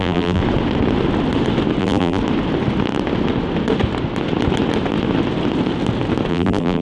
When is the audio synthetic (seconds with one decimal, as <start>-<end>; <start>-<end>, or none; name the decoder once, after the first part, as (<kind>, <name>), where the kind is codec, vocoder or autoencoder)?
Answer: 0.0-0.4 (vocoder, BigVGAN v2); 1.8-2.2; 6.3-6.8